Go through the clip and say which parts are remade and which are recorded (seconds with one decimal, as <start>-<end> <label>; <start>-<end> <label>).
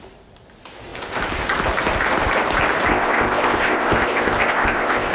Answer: 0.0-2.9 recorded; 2.9-5.1 remade